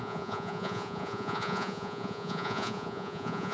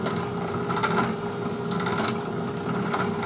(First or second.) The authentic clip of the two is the second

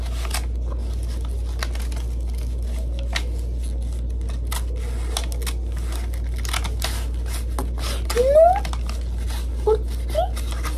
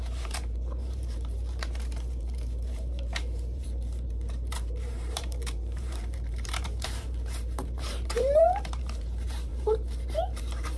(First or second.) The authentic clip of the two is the first